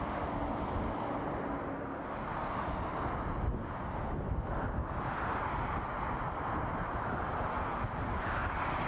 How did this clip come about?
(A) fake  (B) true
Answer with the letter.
B